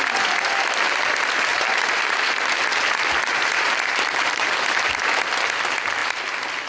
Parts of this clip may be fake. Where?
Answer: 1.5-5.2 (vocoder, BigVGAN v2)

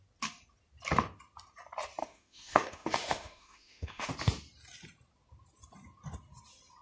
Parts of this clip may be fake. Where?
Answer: 2.0-4.1 (autoencoder, DAC-VAE)

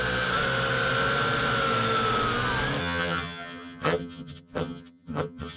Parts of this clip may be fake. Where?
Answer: 2.8-5.6 (vocoder, HiFi-GAN)

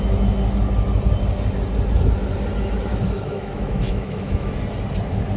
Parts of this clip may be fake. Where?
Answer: 2.9-4.5 (autoencoder, DAC-VAE)

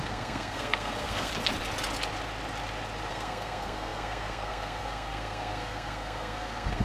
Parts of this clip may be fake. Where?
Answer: 0.0-1.3 (codec, SNAC); 3.1-6.8

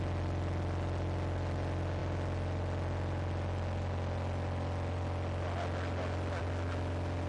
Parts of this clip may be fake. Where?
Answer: none

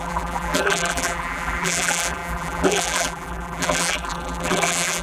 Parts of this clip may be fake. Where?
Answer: 0.0-5.0 (vocoder, BigVGAN v2)

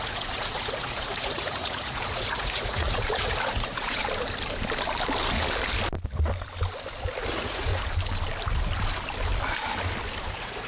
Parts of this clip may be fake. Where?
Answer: 0.0-4.0 (vocoder, Vocos); 7.3-7.7; 10.2-10.7